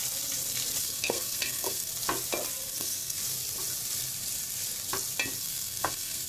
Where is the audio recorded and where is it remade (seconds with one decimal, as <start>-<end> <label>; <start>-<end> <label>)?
0.0-0.8 recorded; 0.8-1.9 remade; 1.9-2.7 recorded; 2.7-3.2 remade; 3.2-5.4 recorded; 5.4-6.3 remade